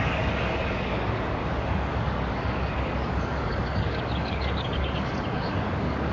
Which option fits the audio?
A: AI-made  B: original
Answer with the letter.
A